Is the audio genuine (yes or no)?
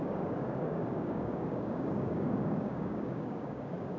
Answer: no